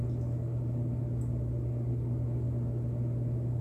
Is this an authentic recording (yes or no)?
yes